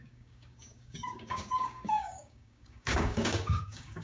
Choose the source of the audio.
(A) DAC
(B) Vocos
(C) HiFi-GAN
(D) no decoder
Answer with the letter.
A